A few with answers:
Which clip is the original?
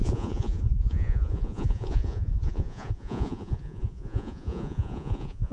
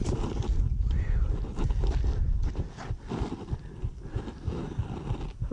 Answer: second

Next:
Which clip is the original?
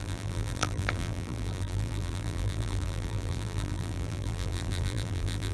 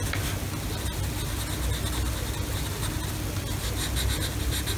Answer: second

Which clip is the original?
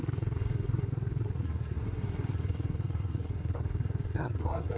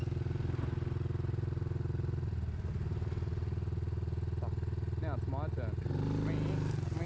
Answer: second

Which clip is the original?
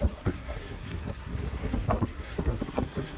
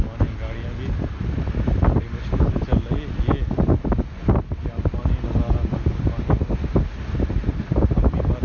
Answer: second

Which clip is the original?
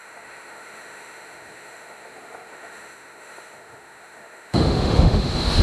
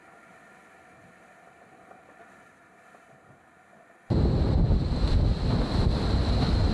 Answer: second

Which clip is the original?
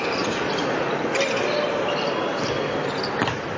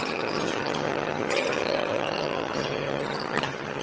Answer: first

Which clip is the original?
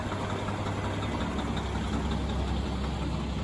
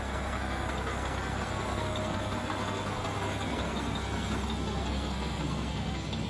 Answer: first